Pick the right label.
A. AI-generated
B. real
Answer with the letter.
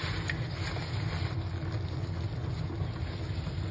B